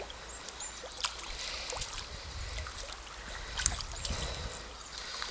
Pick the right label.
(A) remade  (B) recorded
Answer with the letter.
B